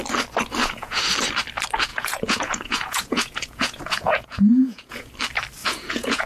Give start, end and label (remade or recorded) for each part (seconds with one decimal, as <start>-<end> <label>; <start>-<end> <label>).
0.0-0.6 recorded; 0.6-1.1 remade; 1.1-1.9 recorded; 1.9-5.1 remade; 5.1-5.6 recorded; 5.6-6.3 remade